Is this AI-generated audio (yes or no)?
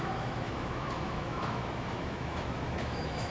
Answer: yes